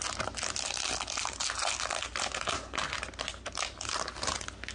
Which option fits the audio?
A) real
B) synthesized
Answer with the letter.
A